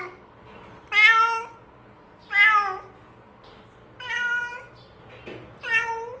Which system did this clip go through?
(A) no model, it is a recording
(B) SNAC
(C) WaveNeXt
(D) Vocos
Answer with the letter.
A